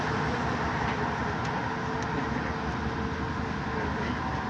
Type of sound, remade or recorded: recorded